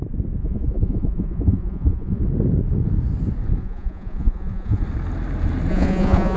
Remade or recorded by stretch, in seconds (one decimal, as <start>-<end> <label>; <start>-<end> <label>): 0.0-0.4 recorded; 0.4-2.2 remade; 2.2-3.6 recorded; 3.6-4.8 remade; 4.8-5.7 recorded; 5.7-6.4 remade